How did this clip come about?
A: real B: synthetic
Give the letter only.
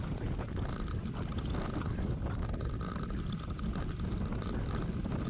A